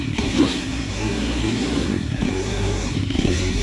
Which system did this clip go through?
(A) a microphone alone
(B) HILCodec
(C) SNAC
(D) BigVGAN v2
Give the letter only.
C